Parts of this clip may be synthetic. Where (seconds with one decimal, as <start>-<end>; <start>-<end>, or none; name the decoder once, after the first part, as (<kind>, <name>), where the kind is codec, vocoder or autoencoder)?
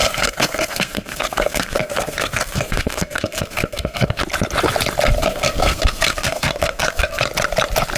0.0-4.2 (codec, SNAC); 5.2-7.2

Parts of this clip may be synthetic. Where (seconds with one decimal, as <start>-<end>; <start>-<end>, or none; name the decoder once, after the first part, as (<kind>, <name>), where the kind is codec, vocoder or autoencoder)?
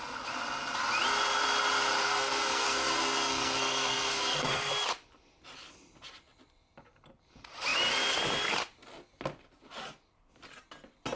2.0-4.7 (codec, SNAC)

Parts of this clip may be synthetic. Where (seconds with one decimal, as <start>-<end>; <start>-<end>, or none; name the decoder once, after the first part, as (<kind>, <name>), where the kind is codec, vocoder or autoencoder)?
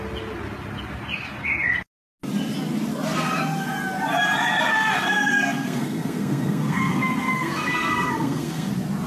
4.7-8.7 (codec, SNAC)